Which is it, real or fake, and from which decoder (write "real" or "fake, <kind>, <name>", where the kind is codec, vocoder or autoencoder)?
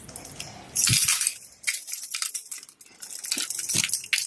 real